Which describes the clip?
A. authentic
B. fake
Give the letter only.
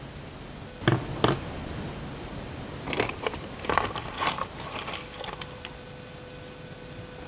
A